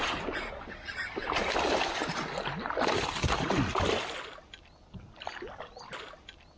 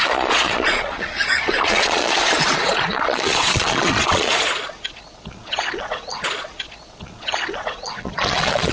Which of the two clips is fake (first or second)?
second